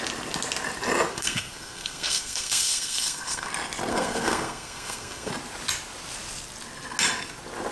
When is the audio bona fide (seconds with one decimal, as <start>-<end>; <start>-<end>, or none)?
0.0-1.1; 3.5-3.9; 5.3-7.7